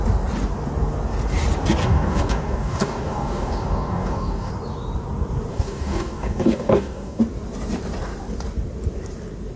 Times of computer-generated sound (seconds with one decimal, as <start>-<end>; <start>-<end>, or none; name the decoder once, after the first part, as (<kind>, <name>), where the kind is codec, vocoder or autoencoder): 1.8-4.5 (codec, DAC); 5.5-7.2